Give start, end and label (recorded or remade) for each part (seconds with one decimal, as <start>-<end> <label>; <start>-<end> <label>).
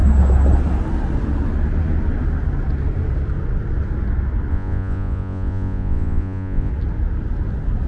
0.0-4.5 recorded; 4.5-6.7 remade; 6.7-7.9 recorded